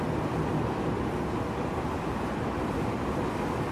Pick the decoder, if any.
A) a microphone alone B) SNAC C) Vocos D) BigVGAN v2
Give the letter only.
A